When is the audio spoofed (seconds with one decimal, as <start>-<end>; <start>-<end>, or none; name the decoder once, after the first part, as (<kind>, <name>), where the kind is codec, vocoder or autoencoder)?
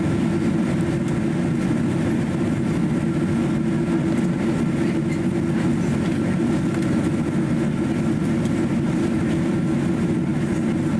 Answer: none